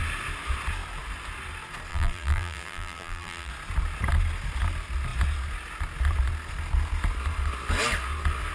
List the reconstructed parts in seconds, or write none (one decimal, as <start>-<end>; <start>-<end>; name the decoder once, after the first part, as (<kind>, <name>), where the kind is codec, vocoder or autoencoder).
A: 1.9-3.5 (vocoder, BigVGAN v2)